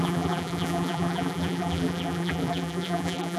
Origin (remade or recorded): remade